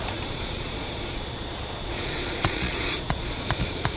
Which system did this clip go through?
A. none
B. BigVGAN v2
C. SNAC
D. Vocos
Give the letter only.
D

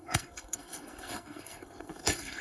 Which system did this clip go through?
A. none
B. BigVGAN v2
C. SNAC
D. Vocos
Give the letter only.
C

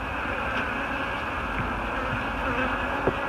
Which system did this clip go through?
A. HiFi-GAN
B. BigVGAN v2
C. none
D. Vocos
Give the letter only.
C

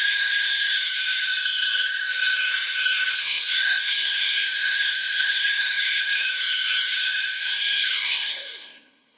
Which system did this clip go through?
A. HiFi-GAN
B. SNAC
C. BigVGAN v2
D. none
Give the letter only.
B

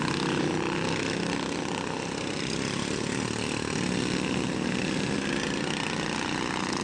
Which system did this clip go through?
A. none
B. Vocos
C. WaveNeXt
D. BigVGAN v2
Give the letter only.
A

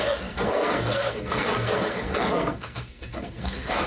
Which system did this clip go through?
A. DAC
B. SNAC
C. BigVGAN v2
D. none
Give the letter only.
B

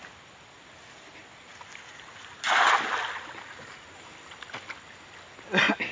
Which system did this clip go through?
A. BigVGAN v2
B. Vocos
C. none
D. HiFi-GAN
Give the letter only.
C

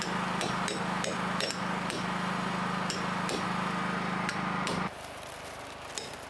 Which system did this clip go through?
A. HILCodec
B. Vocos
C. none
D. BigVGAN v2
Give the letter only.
C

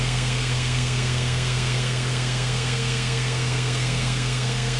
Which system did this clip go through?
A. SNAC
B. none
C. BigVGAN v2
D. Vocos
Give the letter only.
A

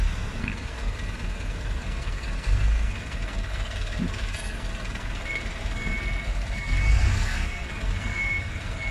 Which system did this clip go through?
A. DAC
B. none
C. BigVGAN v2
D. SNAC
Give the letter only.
D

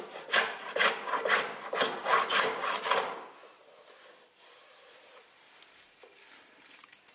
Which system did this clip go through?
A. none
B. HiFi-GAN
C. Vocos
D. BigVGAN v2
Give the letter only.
A